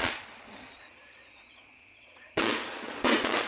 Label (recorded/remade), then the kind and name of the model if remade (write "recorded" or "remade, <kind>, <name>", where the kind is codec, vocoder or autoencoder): remade, vocoder, Vocos